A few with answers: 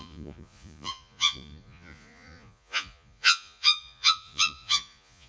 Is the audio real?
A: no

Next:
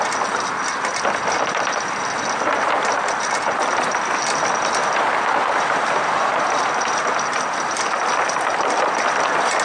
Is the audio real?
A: yes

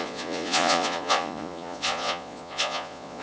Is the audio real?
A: no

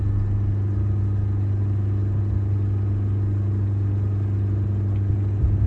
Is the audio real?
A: yes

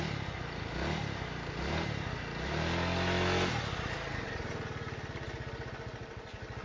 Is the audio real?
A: yes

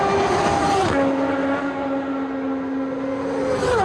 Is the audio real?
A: yes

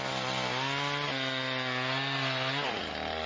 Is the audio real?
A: yes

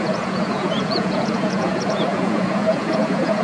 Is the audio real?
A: no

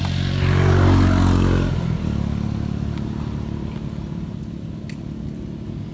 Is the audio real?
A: yes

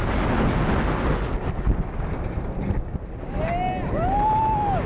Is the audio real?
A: yes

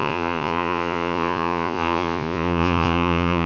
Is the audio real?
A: no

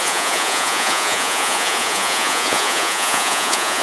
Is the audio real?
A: no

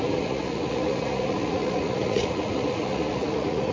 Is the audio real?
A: no